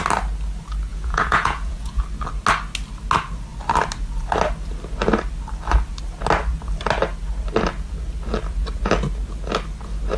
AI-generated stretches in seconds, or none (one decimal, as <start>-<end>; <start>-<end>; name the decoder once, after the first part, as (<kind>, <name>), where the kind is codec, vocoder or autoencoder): 0.9-2.0 (vocoder, Vocos)